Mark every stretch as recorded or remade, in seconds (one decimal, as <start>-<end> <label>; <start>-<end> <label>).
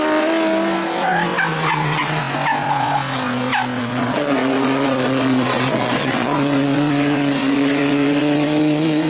0.0-1.5 recorded; 1.5-2.2 remade; 2.2-3.8 recorded; 3.8-9.1 remade